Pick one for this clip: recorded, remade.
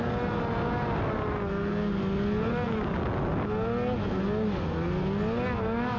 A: recorded